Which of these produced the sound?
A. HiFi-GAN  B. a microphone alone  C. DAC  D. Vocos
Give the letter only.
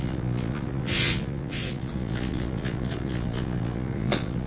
D